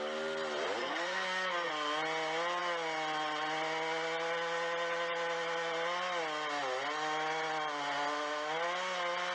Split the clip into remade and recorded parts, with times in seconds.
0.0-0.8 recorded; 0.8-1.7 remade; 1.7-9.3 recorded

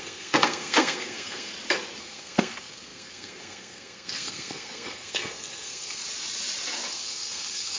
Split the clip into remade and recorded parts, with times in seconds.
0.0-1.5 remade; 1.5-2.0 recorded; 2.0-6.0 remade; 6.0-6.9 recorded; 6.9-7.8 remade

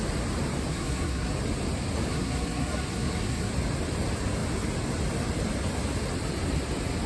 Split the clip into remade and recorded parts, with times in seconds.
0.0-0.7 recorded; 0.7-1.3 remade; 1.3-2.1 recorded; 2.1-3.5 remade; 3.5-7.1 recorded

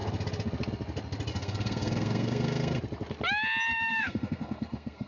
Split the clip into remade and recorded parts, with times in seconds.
0.0-1.3 recorded; 1.3-2.8 remade; 2.8-3.7 recorded; 3.7-5.1 remade

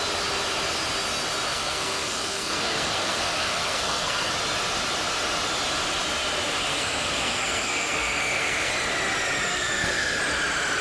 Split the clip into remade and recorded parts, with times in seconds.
0.0-1.5 recorded; 1.5-4.3 remade; 4.3-6.7 recorded; 6.7-8.7 remade; 8.7-9.5 recorded; 9.5-10.2 remade; 10.2-10.8 recorded

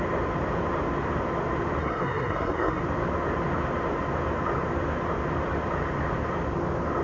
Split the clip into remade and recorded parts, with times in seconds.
0.0-1.8 recorded; 1.8-2.8 remade; 2.8-7.0 recorded

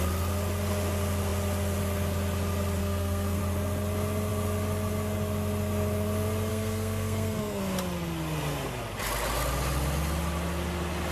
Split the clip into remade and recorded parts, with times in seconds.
0.0-2.8 recorded; 2.8-3.4 remade; 3.4-6.5 recorded; 6.5-7.6 remade; 7.6-11.1 recorded